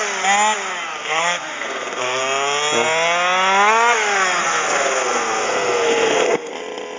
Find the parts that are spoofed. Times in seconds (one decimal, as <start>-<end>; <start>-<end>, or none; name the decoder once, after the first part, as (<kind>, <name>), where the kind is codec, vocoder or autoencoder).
1.0-2.2 (codec, SNAC); 4.4-6.5